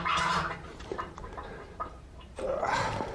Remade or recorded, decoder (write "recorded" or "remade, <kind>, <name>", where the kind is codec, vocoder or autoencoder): remade, vocoder, BigVGAN v2